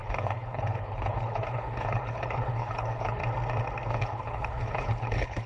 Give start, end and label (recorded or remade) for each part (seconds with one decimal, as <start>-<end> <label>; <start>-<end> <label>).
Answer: 0.0-3.2 remade; 3.2-3.9 recorded; 3.9-5.5 remade